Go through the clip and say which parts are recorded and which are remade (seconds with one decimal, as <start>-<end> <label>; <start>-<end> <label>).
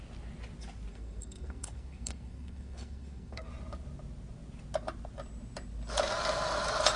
0.0-0.9 recorded; 0.9-3.5 remade; 3.5-7.0 recorded